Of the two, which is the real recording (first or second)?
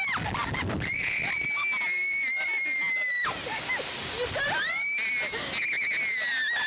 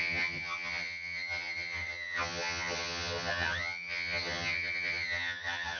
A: first